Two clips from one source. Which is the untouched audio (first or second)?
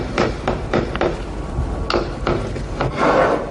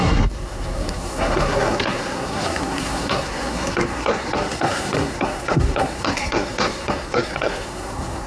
first